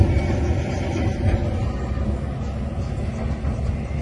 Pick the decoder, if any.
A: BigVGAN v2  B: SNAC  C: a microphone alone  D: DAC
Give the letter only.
C